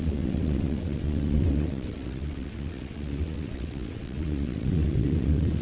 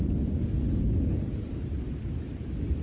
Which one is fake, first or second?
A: first